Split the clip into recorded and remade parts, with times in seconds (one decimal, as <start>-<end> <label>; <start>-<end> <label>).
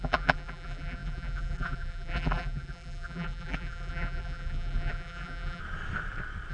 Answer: 0.0-5.6 remade; 5.6-6.5 recorded